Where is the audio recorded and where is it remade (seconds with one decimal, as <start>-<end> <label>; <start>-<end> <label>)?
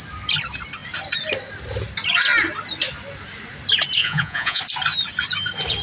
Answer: 0.0-4.0 recorded; 4.0-4.6 remade; 4.6-5.8 recorded